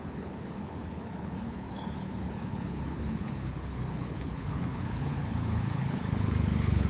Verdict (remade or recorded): remade